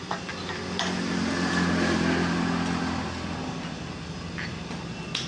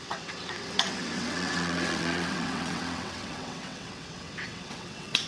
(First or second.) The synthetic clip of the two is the second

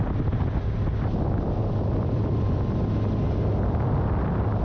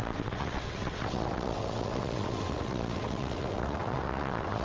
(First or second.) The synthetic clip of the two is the second